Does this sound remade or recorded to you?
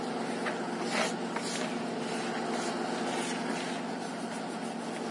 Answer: recorded